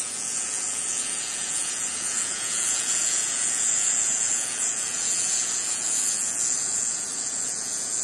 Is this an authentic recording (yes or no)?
no